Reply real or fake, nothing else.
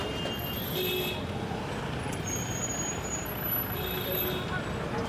real